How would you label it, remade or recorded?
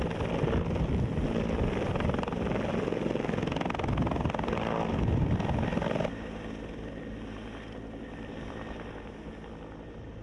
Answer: recorded